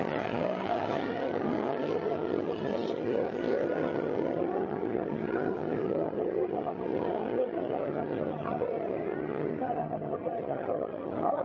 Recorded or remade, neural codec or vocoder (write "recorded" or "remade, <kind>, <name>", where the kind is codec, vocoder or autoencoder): remade, vocoder, HiFi-GAN